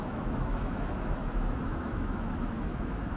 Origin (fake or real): fake